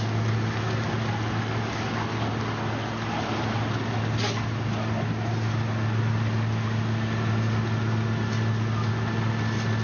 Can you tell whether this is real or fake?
real